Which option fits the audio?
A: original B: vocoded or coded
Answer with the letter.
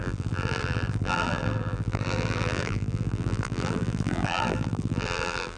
B